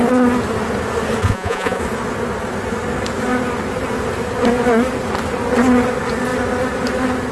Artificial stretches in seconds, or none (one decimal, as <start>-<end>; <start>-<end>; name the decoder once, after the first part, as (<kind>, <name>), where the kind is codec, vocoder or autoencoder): 1.2-1.8 (vocoder, Vocos)